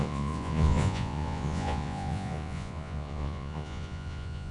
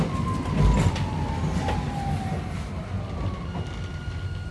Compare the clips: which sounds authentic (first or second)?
second